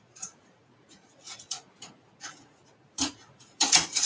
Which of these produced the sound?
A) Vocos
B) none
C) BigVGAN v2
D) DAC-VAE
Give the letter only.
A